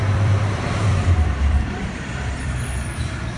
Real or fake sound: fake